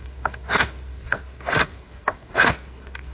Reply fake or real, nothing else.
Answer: fake